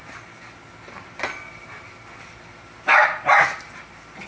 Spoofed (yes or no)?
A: no